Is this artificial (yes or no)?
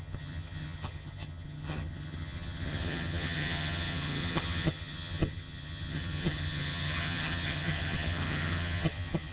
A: yes